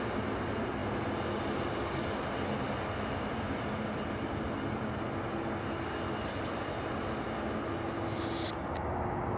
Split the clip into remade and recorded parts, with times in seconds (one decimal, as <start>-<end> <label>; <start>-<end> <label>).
0.0-9.4 recorded